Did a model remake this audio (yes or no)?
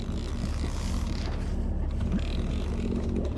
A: no